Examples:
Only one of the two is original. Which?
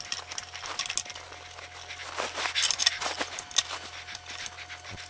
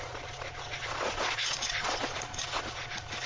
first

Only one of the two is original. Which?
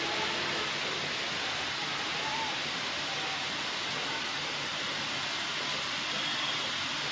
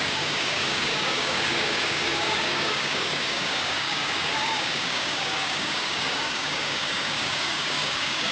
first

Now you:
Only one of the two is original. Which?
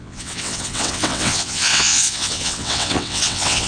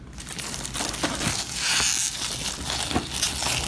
second